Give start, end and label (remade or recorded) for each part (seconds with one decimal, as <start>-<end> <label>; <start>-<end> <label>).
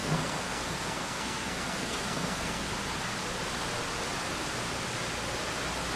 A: 0.0-2.7 remade; 2.7-6.0 recorded